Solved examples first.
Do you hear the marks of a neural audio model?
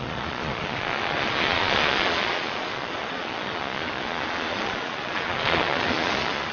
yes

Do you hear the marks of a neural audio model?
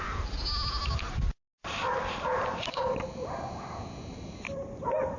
no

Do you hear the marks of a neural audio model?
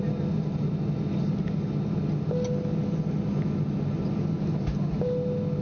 no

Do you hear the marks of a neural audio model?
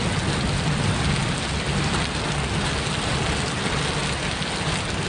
no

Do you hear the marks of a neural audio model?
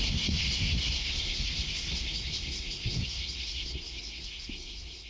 yes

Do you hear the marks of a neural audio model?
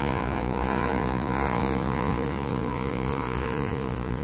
yes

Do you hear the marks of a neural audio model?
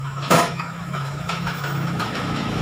yes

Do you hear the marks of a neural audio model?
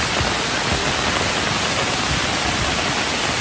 no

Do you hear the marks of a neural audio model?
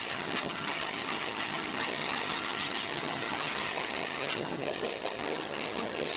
yes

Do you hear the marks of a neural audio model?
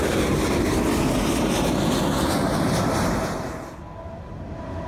no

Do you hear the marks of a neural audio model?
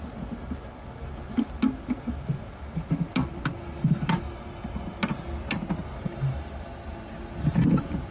no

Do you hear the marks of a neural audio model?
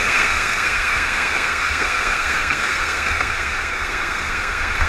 yes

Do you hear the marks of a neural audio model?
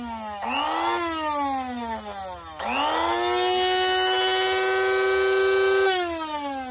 no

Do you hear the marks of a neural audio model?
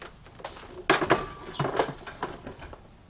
no